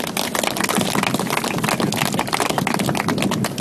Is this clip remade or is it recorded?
recorded